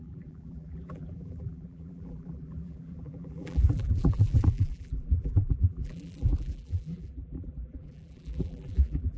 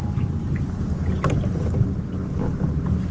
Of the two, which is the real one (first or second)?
second